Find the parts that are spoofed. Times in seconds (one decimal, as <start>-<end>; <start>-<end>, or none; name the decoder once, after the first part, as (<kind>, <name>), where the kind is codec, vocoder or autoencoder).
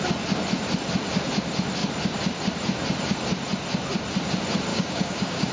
4.7-5.5 (codec, DAC)